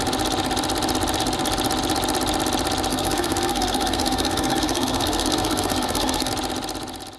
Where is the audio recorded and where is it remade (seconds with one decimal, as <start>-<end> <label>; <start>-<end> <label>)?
0.0-2.9 recorded; 2.9-6.3 remade; 6.3-7.2 recorded